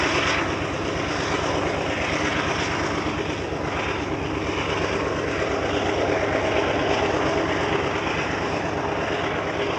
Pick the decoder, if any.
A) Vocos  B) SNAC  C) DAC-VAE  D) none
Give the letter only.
D